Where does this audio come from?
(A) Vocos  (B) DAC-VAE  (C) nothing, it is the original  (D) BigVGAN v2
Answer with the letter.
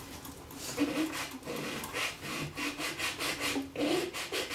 C